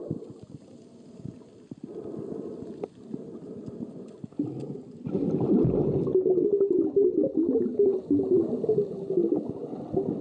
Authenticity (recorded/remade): recorded